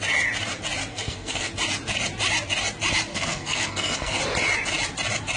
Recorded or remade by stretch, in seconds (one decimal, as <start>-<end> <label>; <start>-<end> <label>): 0.0-0.9 recorded; 0.9-1.5 remade; 1.5-3.1 recorded; 3.1-4.2 remade; 4.2-5.4 recorded